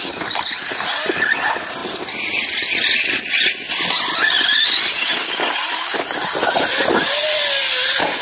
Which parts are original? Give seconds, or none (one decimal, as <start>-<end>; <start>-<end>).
0.0-8.2